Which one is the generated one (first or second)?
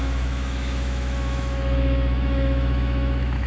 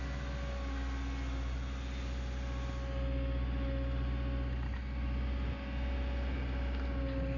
first